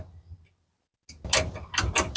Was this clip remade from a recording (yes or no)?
no